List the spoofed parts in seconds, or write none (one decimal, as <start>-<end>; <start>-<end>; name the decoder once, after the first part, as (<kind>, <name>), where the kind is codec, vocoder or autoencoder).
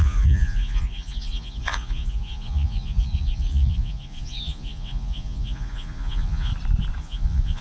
0.0-6.5 (vocoder, Vocos); 7.0-7.6